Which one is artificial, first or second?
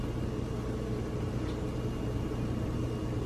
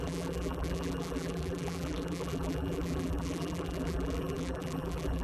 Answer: second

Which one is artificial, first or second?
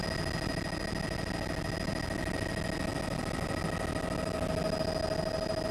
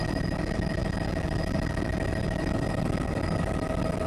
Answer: second